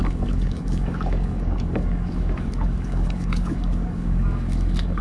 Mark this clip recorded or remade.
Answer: remade